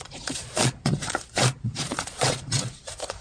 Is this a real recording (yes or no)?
no